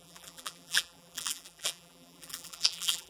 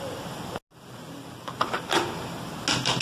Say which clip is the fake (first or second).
first